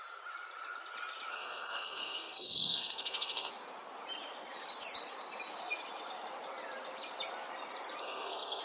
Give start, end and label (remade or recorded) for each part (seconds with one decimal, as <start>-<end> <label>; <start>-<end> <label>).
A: 0.0-1.3 recorded; 1.3-3.5 remade; 3.5-8.0 recorded; 8.0-8.6 remade

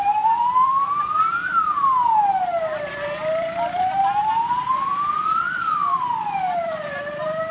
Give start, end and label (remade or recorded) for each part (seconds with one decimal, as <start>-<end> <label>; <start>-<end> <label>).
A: 0.0-1.3 remade; 1.3-2.6 recorded; 2.6-4.9 remade; 4.9-6.0 recorded; 6.0-7.5 remade

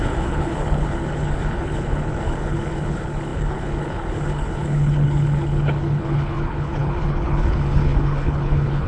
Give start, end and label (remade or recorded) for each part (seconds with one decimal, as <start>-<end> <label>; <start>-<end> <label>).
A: 0.0-8.9 remade

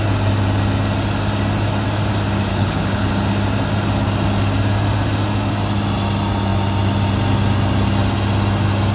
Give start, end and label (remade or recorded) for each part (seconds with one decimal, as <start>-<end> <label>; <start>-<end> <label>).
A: 0.0-2.5 recorded; 2.5-3.1 remade; 3.1-8.9 recorded

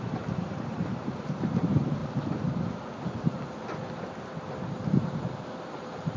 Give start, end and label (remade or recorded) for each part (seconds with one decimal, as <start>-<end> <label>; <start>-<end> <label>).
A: 0.0-2.0 remade; 2.0-5.7 recorded; 5.7-6.2 remade

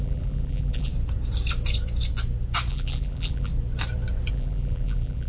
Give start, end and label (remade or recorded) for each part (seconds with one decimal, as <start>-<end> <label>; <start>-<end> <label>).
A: 0.0-0.9 remade; 0.9-2.7 recorded; 2.7-3.5 remade; 3.5-4.3 recorded; 4.3-5.3 remade

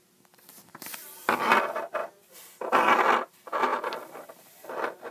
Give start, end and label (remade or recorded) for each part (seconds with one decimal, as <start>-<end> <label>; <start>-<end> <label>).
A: 0.0-2.0 recorded; 2.0-3.3 remade; 3.3-3.7 recorded; 3.7-4.3 remade; 4.3-5.1 recorded